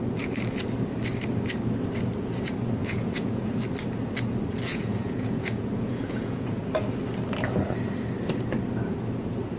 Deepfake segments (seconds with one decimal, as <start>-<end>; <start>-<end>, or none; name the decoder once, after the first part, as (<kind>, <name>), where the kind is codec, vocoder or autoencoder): 2.8-3.6 (vocoder, Vocos); 4.7-6.6

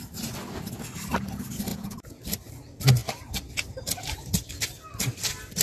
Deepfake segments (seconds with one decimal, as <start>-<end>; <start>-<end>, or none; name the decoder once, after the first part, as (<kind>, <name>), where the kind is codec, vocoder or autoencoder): 1.7-2.2 (vocoder, Vocos)